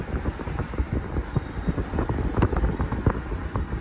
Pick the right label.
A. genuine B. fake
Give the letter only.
A